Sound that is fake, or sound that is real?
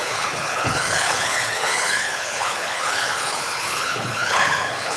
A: fake